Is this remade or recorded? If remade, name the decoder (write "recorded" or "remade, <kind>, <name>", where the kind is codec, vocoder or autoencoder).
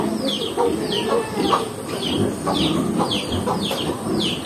remade, vocoder, BigVGAN v2